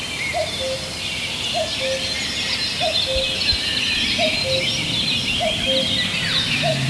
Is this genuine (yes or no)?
yes